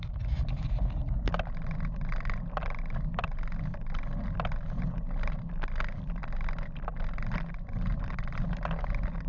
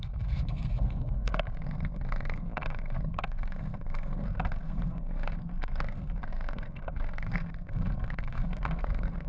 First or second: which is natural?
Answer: first